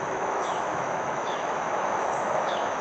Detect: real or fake fake